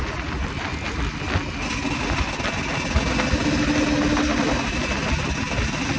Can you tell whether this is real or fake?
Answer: real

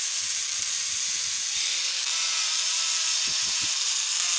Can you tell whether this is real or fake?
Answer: fake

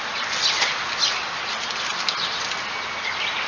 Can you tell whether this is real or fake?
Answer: real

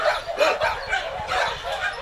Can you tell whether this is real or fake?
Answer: real